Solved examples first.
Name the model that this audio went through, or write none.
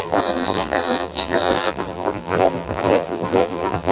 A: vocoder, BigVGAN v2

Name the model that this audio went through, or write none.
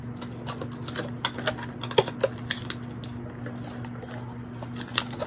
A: none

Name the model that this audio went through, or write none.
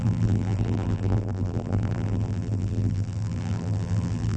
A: vocoder, BigVGAN v2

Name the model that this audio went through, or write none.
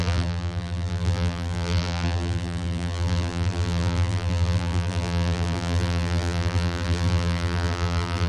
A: vocoder, BigVGAN v2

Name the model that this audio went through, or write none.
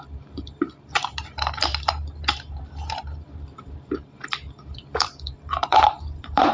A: vocoder, BigVGAN v2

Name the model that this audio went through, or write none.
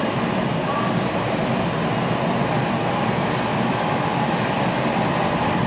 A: vocoder, BigVGAN v2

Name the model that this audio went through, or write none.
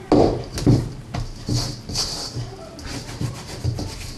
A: none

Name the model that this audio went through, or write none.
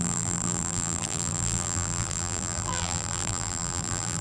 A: vocoder, BigVGAN v2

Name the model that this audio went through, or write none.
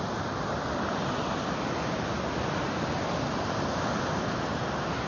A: none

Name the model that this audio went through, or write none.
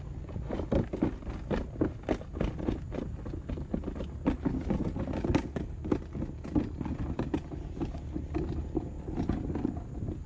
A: none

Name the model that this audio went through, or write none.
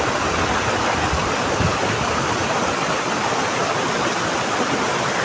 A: none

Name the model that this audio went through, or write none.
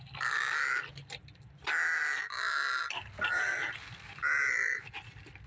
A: none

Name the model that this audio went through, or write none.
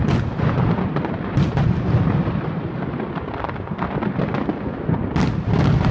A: none